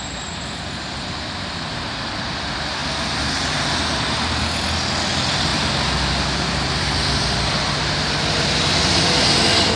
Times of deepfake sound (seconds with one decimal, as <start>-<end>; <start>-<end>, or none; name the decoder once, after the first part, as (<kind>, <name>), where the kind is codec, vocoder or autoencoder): none